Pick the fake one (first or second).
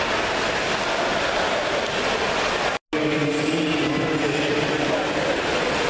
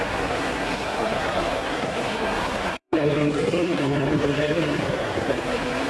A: second